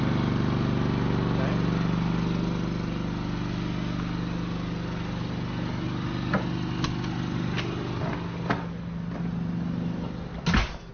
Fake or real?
real